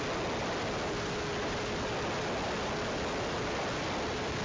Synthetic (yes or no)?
no